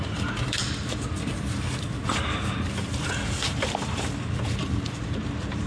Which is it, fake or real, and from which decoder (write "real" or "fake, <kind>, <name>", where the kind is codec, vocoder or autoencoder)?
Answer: fake, vocoder, BigVGAN v2